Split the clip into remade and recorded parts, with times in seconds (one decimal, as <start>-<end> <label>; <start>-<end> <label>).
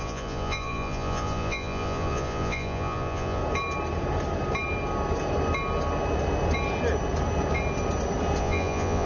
0.0-3.4 remade; 3.4-8.4 recorded; 8.4-9.1 remade